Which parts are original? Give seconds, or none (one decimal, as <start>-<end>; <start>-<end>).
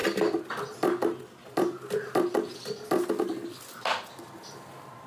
0.0-5.1